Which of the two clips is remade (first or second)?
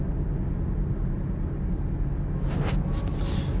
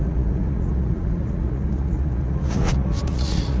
second